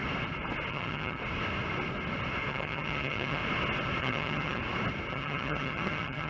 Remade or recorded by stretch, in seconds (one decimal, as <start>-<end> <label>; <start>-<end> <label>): 0.0-0.7 recorded; 0.7-1.2 remade; 1.2-2.5 recorded; 2.5-3.4 remade; 3.4-4.0 recorded; 4.0-4.6 remade; 4.6-5.1 recorded; 5.1-6.3 remade

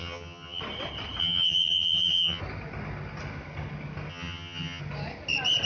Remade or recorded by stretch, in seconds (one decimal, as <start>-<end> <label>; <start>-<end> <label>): 0.0-0.6 remade; 0.6-1.2 recorded; 1.2-2.4 remade; 2.4-4.1 recorded; 4.1-4.8 remade; 4.8-5.6 recorded

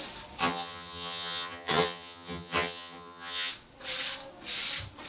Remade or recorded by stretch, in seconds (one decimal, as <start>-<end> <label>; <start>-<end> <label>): 0.0-0.4 recorded; 0.4-3.5 remade; 3.5-5.1 recorded

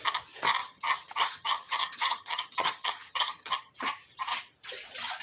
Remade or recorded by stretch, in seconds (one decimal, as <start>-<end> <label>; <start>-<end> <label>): 0.0-0.6 recorded; 0.6-3.7 remade; 3.7-5.2 recorded

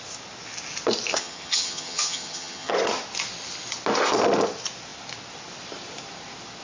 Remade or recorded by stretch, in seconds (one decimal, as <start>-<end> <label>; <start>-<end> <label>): 0.0-1.1 recorded; 1.1-2.7 remade; 2.7-6.6 recorded